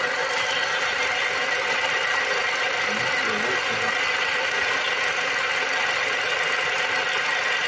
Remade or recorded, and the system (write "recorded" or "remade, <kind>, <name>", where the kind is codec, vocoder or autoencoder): recorded